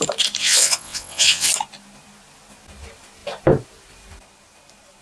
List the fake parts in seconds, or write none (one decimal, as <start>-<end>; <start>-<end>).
0.4-1.5